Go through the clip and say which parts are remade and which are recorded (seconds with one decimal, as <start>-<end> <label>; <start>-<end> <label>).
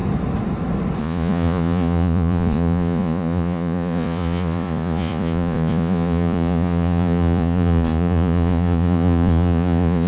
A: 0.0-1.0 recorded; 1.0-10.1 remade